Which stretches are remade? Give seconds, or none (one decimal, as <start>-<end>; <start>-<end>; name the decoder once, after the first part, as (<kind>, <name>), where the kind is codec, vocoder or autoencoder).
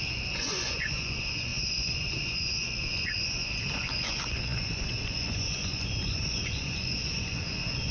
0.0-7.9 (vocoder, Vocos)